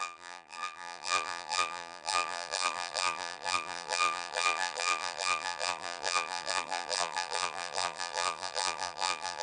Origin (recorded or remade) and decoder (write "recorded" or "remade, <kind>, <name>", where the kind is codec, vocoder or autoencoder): remade, vocoder, BigVGAN v2